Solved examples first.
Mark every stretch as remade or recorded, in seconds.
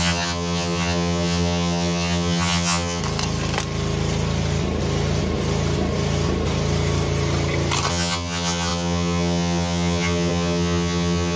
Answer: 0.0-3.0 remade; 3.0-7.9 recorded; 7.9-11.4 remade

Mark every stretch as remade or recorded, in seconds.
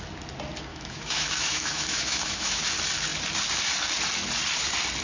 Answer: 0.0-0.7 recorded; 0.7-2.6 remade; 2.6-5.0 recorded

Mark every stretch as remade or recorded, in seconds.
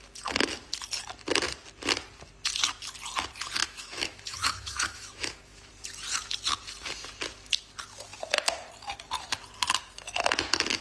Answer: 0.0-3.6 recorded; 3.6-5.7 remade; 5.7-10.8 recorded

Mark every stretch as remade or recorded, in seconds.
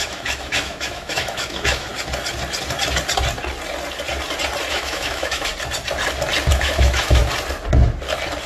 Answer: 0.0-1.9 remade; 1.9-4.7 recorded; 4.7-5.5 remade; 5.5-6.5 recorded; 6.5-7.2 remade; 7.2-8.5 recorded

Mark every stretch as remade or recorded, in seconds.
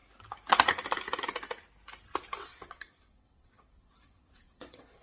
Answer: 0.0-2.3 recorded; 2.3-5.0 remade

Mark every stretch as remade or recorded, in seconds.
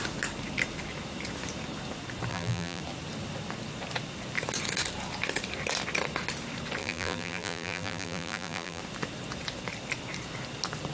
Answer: 0.0-2.3 recorded; 2.3-2.8 remade; 2.8-6.8 recorded; 6.8-8.8 remade; 8.8-10.9 recorded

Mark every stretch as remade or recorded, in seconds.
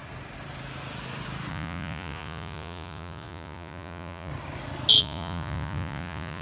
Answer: 0.0-1.5 recorded; 1.5-4.3 remade; 4.3-5.0 recorded; 5.0-6.4 remade